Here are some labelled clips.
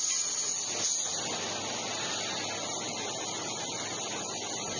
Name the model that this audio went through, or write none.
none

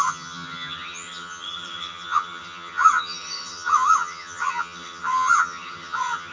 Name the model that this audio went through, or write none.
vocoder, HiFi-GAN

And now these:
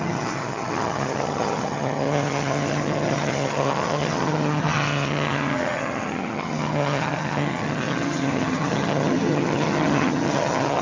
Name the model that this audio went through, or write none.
vocoder, HiFi-GAN